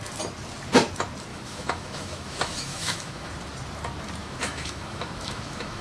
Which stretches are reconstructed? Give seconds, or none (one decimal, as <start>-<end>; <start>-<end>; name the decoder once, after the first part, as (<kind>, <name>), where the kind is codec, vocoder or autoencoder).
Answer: 1.3-3.3 (autoencoder, DAC-VAE); 4.2-5.8